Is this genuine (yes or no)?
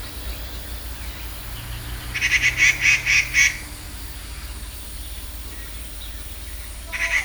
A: yes